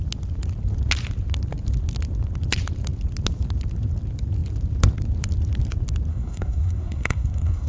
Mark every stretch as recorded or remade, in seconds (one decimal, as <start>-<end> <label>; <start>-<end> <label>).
0.0-6.1 recorded; 6.1-7.7 remade